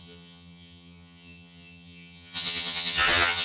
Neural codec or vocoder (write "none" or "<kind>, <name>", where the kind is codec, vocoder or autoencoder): vocoder, HiFi-GAN